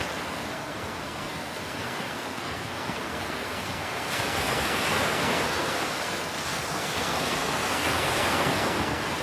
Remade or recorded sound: remade